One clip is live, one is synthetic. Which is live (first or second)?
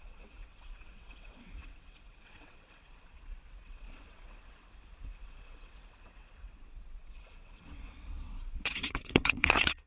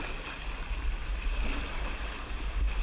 second